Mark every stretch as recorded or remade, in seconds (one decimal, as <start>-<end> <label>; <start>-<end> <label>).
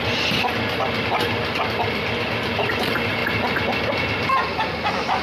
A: 0.0-5.2 recorded